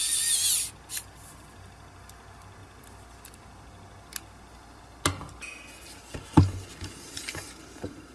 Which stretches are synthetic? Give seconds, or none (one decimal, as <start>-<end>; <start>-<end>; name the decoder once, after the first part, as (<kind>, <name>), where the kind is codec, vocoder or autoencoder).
none